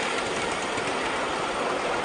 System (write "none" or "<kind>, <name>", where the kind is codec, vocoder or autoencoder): none